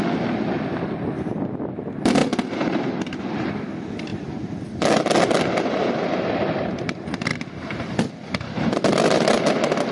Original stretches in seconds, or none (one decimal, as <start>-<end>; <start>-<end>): 0.0-4.1; 4.8-9.9

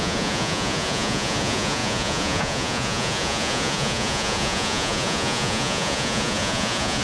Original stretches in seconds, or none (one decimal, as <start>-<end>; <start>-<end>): none

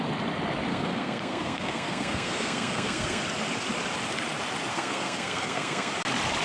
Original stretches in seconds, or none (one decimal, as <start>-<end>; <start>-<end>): 0.0-0.7; 3.2-4.7; 5.9-6.4

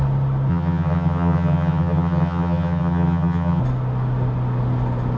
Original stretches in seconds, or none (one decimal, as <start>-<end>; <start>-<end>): 0.0-0.5; 3.6-5.2